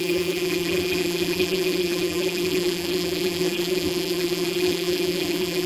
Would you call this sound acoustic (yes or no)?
no